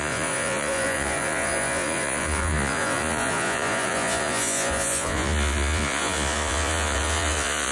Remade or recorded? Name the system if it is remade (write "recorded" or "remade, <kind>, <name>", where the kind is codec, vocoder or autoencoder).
remade, vocoder, Vocos